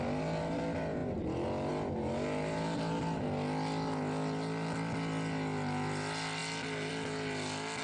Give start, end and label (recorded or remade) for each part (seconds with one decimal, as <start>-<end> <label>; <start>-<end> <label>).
0.0-7.8 recorded